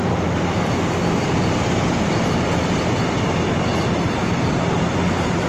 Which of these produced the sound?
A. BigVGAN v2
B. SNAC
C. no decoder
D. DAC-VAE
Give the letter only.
C